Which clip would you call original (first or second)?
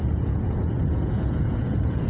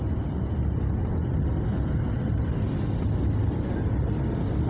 second